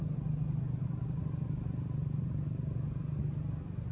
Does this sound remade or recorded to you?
recorded